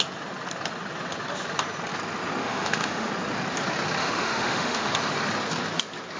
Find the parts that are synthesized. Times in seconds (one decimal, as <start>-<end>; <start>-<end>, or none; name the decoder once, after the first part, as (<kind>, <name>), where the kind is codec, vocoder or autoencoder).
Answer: 2.4-3.1 (autoencoder, DAC-VAE); 4.0-4.9